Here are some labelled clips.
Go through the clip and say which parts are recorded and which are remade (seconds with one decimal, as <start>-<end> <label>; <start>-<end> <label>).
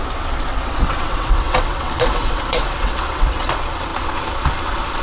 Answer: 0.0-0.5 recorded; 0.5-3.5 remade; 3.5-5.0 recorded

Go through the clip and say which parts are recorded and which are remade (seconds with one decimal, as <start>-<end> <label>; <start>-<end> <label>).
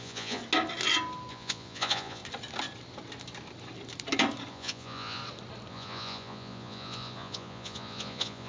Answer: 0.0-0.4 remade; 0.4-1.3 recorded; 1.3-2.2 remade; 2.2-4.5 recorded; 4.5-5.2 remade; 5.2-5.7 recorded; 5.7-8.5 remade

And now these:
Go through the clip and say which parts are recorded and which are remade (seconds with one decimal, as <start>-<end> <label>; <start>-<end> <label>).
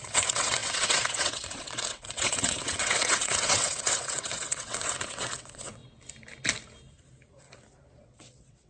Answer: 0.0-5.8 remade; 5.8-8.0 recorded; 8.0-8.7 remade